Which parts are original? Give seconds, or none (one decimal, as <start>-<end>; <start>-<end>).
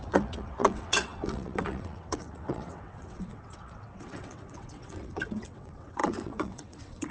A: none